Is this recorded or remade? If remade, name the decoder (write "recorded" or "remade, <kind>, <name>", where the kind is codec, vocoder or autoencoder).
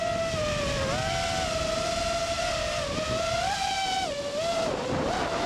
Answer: recorded